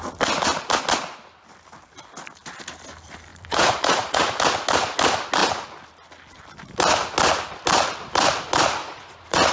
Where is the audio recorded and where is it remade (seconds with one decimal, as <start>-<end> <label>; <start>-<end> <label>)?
0.0-3.3 recorded; 3.3-4.4 remade; 4.4-8.8 recorded; 8.8-9.5 remade